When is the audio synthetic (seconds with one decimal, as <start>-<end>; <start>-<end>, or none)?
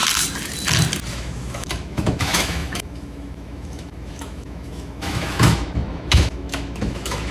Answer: 1.1-7.3